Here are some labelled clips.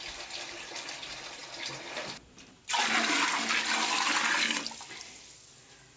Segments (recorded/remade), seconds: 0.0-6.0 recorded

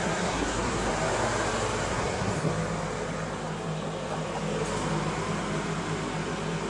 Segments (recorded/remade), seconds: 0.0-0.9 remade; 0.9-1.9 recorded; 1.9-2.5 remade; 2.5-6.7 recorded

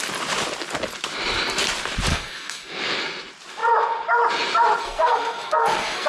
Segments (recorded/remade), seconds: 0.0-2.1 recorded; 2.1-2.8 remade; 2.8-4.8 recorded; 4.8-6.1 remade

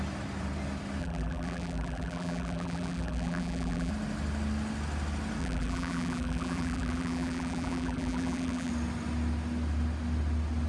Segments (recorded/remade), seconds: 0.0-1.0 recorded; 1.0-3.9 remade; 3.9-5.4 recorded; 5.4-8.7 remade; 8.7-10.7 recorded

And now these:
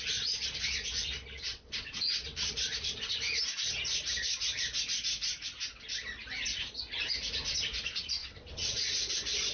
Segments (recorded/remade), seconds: 0.0-1.5 recorded; 1.5-2.5 remade; 2.5-8.2 recorded; 8.2-9.0 remade; 9.0-9.5 recorded